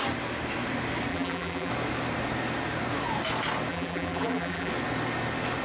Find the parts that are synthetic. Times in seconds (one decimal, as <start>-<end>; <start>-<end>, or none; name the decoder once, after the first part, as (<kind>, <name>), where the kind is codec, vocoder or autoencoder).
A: 1.1-1.7 (vocoder, BigVGAN v2); 3.7-4.7